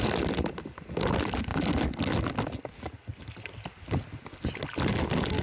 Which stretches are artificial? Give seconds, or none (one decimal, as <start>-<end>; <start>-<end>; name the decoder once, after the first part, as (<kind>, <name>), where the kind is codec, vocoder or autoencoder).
none